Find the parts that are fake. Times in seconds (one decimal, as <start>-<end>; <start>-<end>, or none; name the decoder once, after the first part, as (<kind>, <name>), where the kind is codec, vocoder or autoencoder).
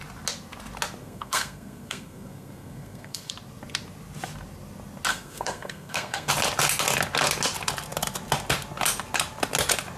1.0-3.3 (codec, SNAC); 5.1-6.3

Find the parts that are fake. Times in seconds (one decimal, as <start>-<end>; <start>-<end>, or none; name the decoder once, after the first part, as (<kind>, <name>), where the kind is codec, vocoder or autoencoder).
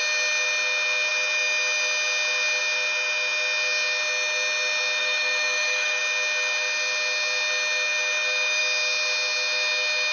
5.0-6.0 (autoencoder, DAC-VAE)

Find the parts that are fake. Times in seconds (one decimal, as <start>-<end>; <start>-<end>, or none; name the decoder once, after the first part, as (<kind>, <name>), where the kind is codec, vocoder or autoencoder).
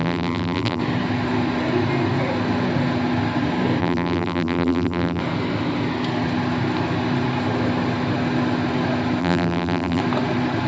0.0-0.8 (vocoder, BigVGAN v2); 3.8-5.2; 9.2-10.0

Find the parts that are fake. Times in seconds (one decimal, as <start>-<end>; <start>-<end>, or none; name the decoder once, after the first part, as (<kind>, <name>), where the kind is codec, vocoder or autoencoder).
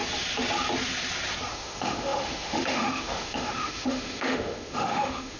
1.5-5.4 (autoencoder, DAC-VAE)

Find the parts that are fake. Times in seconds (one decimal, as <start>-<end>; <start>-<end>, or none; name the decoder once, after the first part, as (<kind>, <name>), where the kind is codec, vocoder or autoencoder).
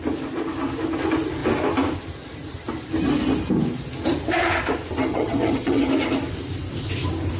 5.1-5.9 (vocoder, HiFi-GAN)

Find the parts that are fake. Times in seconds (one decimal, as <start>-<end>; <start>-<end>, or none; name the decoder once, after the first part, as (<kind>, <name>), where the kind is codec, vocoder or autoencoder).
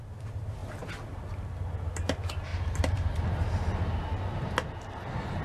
2.5-3.2 (vocoder, BigVGAN v2)